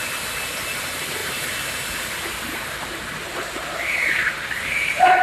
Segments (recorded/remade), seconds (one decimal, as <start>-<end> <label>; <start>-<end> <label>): 0.0-1.2 recorded; 1.2-4.3 remade; 4.3-5.2 recorded